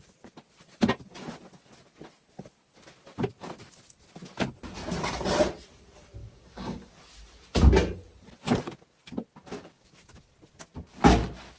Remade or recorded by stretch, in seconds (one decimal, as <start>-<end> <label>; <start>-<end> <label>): 0.0-6.2 recorded; 6.2-6.9 remade; 6.9-9.4 recorded; 9.4-9.9 remade; 9.9-11.6 recorded